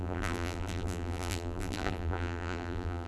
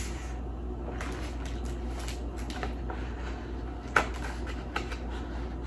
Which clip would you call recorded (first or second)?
second